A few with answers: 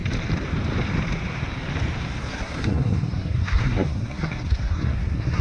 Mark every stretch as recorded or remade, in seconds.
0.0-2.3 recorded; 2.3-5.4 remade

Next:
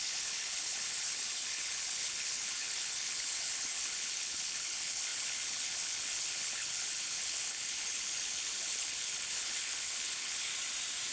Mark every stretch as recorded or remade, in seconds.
0.0-10.5 remade; 10.5-11.1 recorded

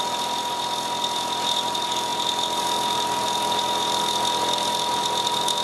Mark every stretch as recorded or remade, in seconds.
0.0-5.6 recorded

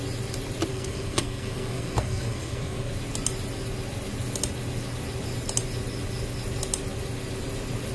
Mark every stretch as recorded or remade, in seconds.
0.0-0.7 recorded; 0.7-2.9 remade; 2.9-7.9 recorded